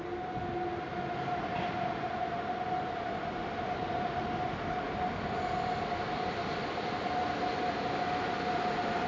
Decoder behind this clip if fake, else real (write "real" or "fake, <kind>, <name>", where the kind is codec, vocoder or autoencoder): real